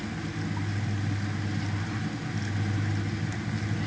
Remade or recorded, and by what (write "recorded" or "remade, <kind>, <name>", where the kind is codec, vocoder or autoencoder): recorded